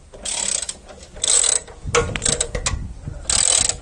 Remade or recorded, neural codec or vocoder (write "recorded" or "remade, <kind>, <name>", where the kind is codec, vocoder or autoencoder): recorded